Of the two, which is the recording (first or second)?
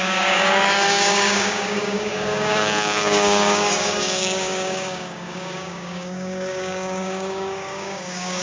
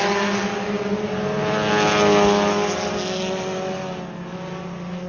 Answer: second